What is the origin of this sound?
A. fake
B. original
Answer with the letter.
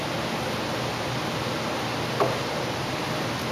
B